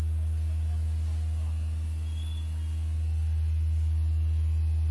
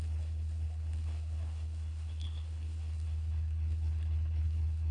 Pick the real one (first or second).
first